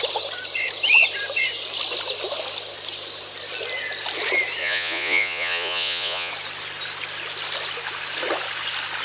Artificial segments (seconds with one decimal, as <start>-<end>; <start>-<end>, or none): 4.6-6.3